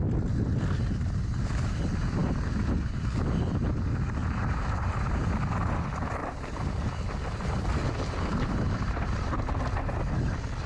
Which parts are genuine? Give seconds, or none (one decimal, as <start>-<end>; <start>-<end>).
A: 0.0-4.2; 5.3-6.2; 9.6-10.7